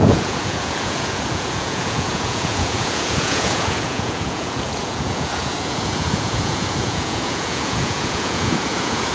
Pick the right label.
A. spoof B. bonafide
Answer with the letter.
A